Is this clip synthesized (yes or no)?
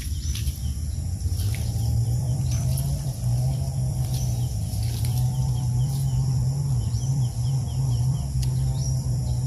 yes